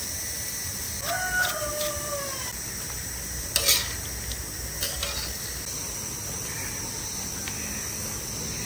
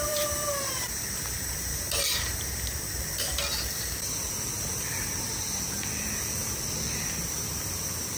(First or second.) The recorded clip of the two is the first